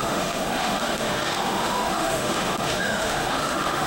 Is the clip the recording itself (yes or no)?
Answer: no